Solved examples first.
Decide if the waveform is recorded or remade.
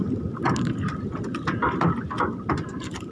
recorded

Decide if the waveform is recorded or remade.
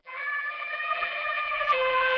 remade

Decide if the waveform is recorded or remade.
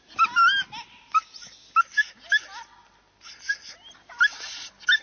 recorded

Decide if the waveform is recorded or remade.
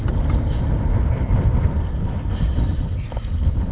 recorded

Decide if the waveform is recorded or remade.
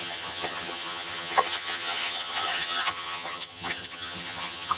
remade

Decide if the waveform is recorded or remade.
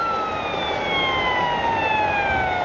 recorded